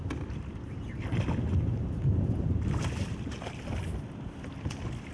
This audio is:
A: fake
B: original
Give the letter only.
B